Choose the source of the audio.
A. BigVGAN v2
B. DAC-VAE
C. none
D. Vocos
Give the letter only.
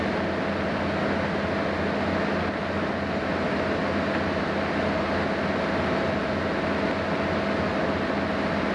C